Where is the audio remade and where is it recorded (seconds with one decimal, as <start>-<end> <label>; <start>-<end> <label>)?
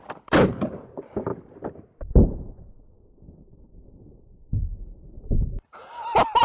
0.0-1.3 remade; 1.3-4.2 recorded; 4.2-6.4 remade